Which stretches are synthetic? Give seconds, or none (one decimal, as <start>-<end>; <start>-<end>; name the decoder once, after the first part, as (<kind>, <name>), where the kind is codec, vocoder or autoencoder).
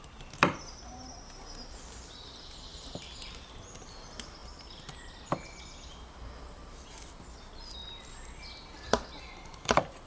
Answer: none